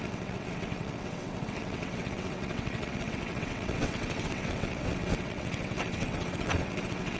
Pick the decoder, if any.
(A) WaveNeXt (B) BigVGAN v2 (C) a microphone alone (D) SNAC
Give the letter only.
A